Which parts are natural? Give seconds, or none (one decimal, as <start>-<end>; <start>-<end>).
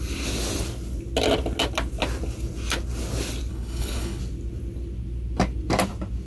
0.0-3.5; 4.2-6.3